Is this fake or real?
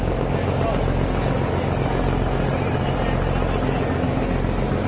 real